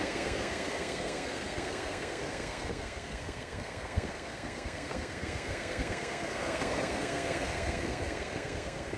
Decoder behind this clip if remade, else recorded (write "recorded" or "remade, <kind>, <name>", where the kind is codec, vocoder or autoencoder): remade, codec, SNAC